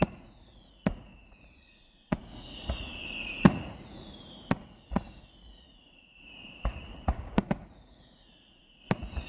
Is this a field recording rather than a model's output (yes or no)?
no